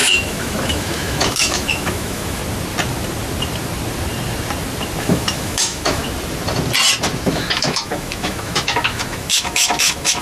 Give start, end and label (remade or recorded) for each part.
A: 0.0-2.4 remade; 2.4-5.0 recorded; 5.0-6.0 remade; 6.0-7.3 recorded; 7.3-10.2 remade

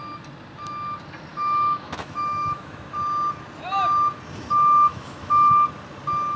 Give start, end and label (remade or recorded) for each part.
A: 0.0-1.3 recorded; 1.3-2.9 remade; 2.9-4.9 recorded; 4.9-5.5 remade; 5.5-6.4 recorded

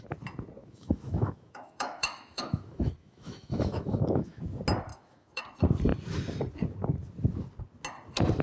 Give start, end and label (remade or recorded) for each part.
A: 0.0-0.6 recorded; 0.6-4.4 remade; 4.4-4.9 recorded; 4.9-5.4 remade; 5.4-8.4 recorded

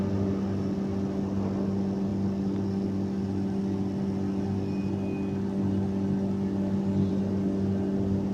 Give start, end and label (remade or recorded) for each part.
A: 0.0-8.3 recorded

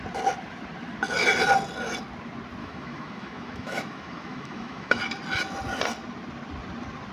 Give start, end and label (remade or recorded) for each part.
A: 0.0-2.6 recorded; 2.6-5.0 remade; 5.0-7.1 recorded

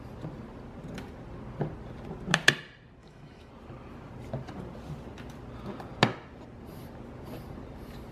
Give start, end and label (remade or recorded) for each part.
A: 0.0-3.0 recorded; 3.0-3.5 remade; 3.5-8.1 recorded

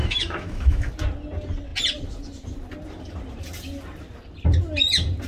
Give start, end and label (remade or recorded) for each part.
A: 0.0-0.9 remade; 0.9-5.3 recorded

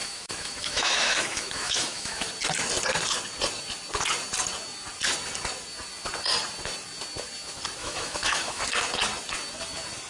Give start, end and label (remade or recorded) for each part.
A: 0.0-2.3 remade; 2.3-7.8 recorded; 7.8-8.6 remade; 8.6-10.1 recorded